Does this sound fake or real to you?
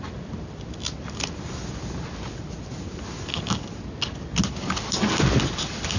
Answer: real